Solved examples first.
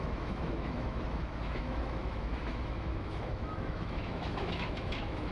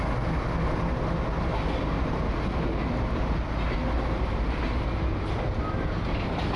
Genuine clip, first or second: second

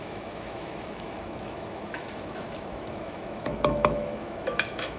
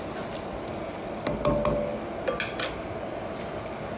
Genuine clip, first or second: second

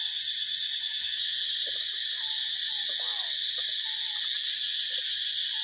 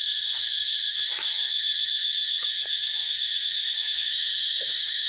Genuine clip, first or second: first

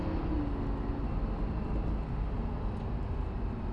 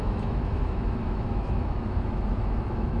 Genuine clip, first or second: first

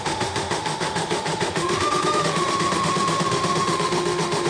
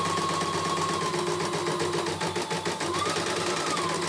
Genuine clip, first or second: second